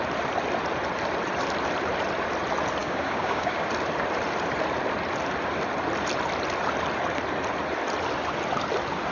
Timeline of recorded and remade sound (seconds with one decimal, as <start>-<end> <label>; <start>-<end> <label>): 0.0-2.8 recorded; 2.8-3.7 remade; 3.7-9.1 recorded